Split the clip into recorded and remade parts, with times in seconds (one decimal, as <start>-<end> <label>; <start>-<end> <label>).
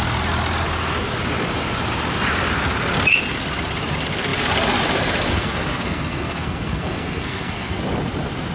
0.0-5.3 recorded; 5.3-7.8 remade; 7.8-8.5 recorded